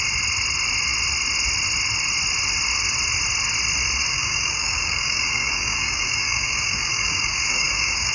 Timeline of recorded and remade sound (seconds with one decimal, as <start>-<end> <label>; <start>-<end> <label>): 0.0-4.1 recorded; 4.1-8.1 remade